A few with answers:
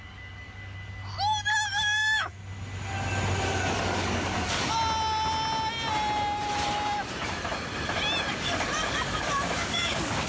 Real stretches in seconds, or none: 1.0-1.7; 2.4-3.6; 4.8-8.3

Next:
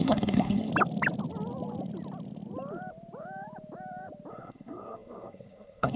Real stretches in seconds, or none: 0.7-4.3

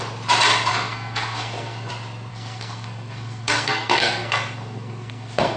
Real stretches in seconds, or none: 0.0-0.7; 1.9-2.3